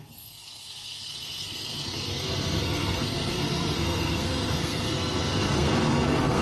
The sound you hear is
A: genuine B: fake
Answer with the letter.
B